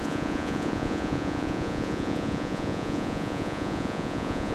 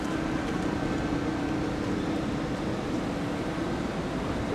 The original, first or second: second